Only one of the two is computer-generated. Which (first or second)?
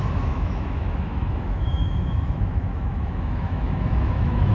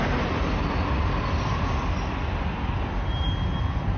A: first